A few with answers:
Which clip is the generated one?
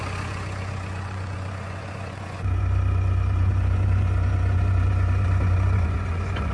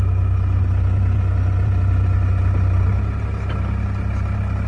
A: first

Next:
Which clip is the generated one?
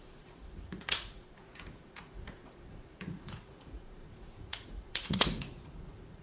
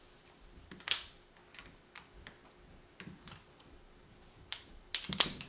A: first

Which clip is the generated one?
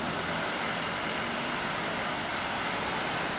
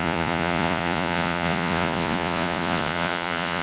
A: second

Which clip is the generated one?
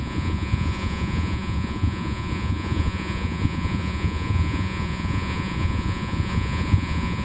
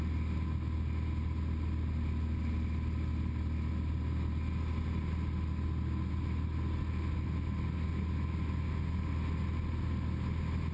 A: first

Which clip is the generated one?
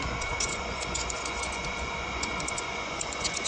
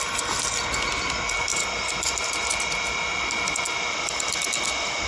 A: first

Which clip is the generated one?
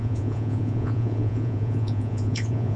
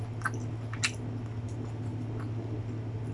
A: first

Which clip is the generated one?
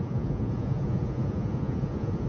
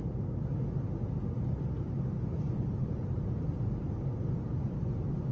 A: first